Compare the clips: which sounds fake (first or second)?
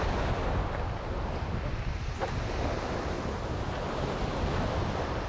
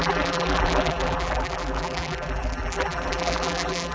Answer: second